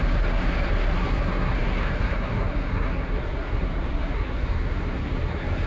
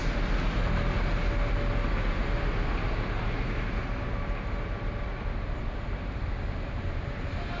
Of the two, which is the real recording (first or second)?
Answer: second